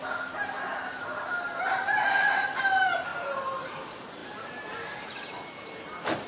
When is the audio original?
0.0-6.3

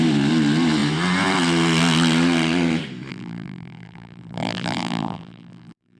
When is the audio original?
0.0-3.1